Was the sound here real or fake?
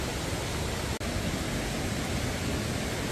real